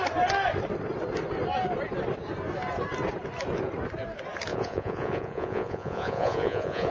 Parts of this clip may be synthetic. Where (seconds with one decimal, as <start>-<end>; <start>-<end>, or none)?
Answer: 4.5-6.9

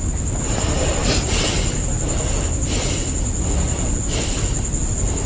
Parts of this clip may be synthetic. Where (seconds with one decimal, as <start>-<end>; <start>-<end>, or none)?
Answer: none

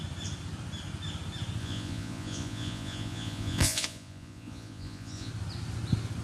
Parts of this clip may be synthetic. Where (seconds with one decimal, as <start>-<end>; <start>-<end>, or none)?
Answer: 1.6-5.3

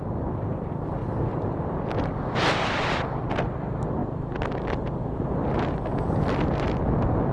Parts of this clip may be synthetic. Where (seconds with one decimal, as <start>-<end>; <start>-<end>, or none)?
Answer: 1.0-3.3

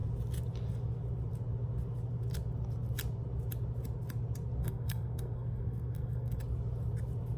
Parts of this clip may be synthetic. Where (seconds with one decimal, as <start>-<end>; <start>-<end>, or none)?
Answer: 4.6-6.4

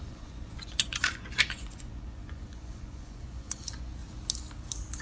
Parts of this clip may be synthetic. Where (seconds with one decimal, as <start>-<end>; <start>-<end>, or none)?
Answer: 0.0-4.0